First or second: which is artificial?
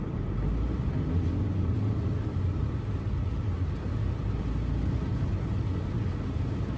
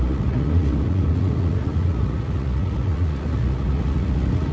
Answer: second